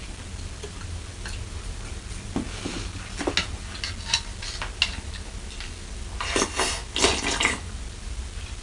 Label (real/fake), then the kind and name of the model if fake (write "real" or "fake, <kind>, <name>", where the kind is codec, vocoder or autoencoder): real